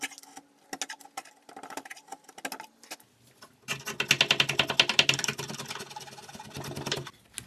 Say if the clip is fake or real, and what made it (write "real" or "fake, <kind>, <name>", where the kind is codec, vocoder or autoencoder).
real